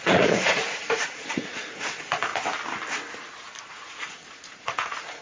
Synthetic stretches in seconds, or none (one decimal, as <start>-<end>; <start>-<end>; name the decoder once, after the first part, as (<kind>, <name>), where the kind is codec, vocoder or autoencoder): 0.0-2.3 (vocoder, Vocos); 3.6-5.2

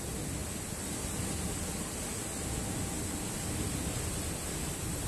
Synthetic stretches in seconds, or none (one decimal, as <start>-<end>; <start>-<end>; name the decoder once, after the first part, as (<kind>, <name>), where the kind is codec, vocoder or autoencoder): none

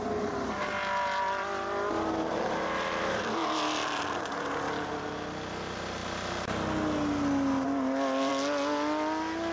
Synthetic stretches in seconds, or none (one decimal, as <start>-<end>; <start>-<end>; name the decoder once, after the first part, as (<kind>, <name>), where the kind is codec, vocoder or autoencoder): none